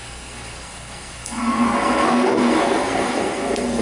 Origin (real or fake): fake